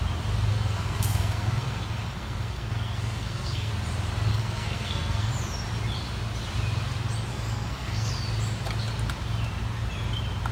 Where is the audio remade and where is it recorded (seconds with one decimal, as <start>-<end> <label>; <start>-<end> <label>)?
0.0-0.5 recorded; 0.5-3.7 remade; 3.7-4.3 recorded; 4.3-5.3 remade; 5.3-7.3 recorded; 7.3-8.1 remade; 8.1-10.5 recorded